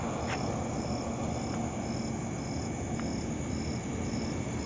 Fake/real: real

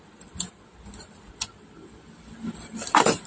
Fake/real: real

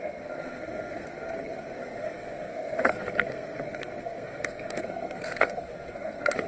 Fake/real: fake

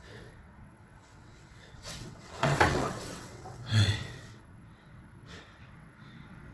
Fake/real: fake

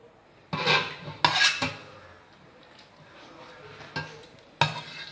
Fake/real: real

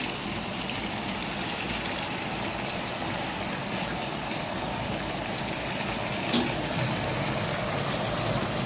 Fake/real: real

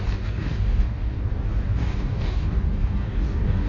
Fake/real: fake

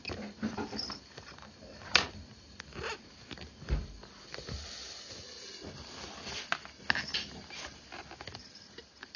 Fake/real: real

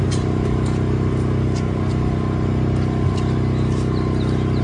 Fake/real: real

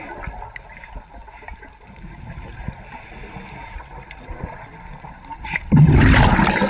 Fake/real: real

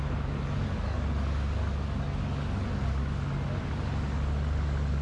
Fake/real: real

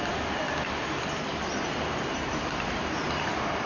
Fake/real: real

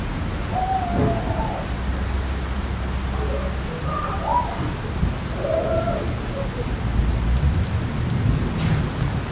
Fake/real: real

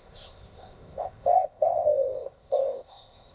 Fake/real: fake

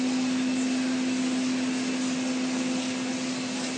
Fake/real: real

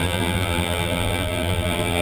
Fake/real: fake